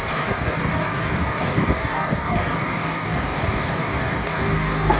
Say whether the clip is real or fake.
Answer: fake